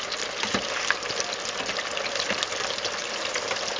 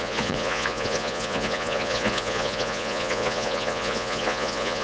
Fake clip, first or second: second